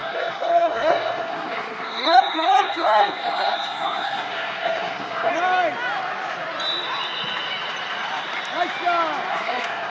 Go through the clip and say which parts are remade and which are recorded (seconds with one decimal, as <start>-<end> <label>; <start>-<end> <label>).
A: 0.0-5.3 remade; 5.3-9.3 recorded; 9.3-9.9 remade